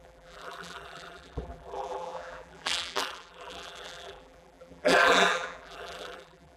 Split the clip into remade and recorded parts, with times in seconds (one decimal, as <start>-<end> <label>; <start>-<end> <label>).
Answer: 0.0-6.6 remade